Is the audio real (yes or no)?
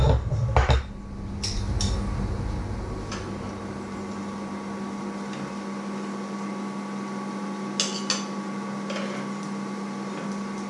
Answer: yes